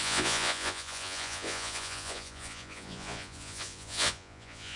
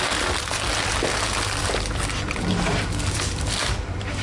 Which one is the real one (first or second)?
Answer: second